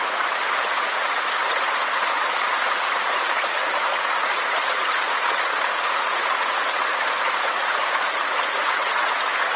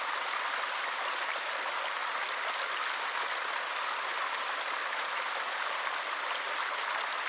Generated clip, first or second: first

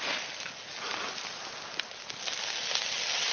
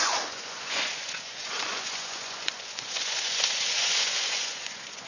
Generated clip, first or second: second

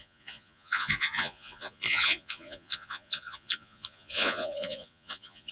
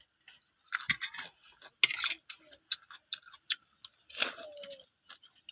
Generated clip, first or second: first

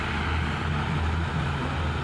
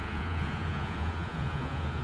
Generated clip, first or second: second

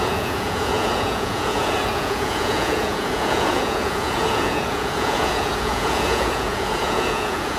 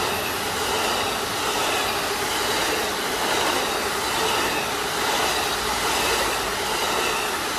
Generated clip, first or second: first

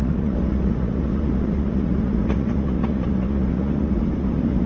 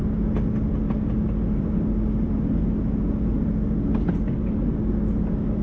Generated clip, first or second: first